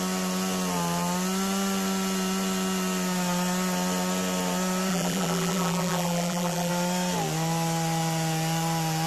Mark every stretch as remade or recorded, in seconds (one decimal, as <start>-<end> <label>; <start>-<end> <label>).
0.0-4.9 recorded; 4.9-6.7 remade; 6.7-9.1 recorded